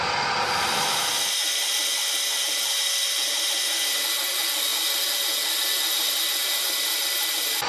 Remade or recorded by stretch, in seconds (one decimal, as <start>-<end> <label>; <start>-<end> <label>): 0.0-1.4 remade; 1.4-2.0 recorded; 2.0-4.7 remade; 4.7-7.1 recorded; 7.1-7.7 remade